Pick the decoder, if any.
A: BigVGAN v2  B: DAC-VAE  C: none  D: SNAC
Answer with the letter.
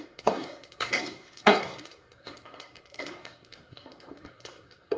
D